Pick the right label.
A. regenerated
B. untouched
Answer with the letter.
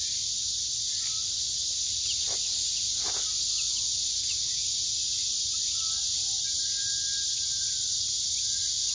B